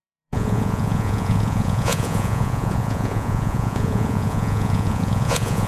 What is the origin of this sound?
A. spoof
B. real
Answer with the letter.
A